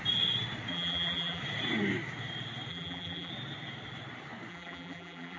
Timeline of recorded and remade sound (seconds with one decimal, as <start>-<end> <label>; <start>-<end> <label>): 0.0-0.7 recorded; 0.7-1.4 remade; 1.4-2.7 recorded; 2.7-3.3 remade; 3.3-4.5 recorded; 4.5-5.4 remade